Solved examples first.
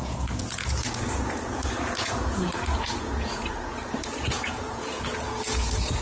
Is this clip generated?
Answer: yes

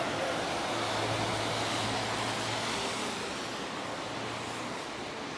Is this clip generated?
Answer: no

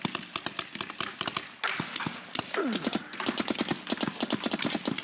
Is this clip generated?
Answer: no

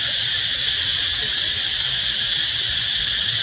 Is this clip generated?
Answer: no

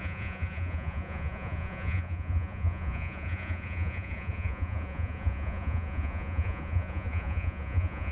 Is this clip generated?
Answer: yes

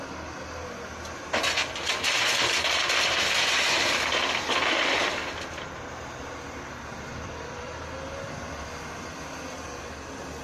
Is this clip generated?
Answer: no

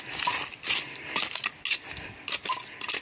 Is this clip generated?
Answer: no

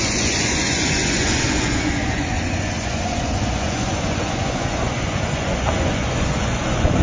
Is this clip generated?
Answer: yes